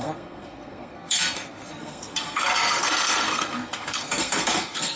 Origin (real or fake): fake